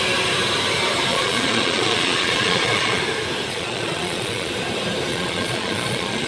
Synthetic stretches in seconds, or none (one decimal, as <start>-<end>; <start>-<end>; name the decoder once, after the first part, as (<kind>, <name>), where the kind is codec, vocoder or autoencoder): 1.1-3.0 (vocoder, Vocos); 3.5-4.5; 5.1-6.3